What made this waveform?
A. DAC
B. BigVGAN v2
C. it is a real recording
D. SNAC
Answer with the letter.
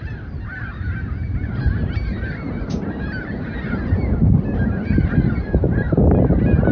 B